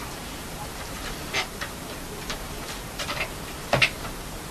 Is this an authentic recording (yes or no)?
no